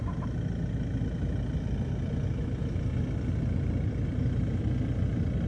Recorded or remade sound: recorded